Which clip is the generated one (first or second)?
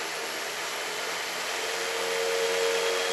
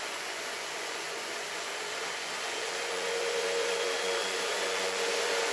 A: second